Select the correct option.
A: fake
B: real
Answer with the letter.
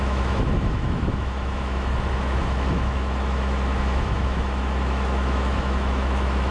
A